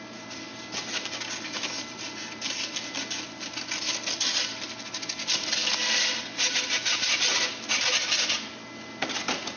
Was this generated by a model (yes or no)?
no